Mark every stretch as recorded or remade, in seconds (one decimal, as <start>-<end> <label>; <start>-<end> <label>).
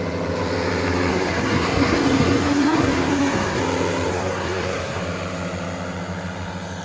0.0-1.1 recorded; 1.1-3.6 remade; 3.6-4.1 recorded; 4.1-5.0 remade; 5.0-6.8 recorded